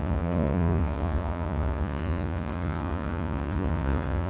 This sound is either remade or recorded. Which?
remade